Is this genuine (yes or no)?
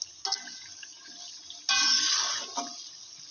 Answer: yes